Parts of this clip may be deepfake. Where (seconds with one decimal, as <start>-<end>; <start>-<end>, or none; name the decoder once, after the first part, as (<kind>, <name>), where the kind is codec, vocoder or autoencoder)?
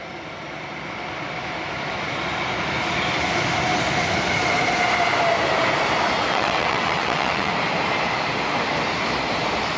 6.3-7.5 (vocoder, WaveNeXt)